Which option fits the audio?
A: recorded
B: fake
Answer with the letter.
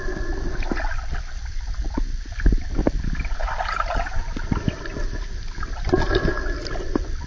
A